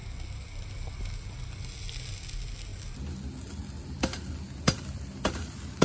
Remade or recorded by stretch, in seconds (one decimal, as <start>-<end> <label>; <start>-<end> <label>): 0.0-5.8 recorded